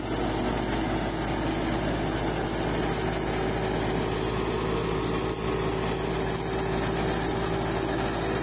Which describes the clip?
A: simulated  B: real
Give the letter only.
B